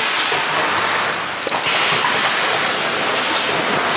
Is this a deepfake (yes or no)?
no